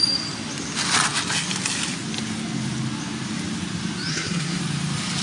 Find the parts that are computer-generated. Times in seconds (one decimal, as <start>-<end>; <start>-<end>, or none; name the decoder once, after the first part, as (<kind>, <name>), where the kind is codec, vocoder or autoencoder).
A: 4.1-4.6 (codec, SNAC)